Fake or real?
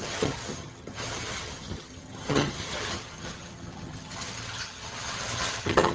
fake